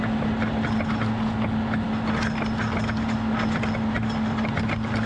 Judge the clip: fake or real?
real